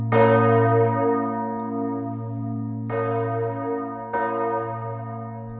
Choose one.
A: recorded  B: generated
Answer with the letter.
A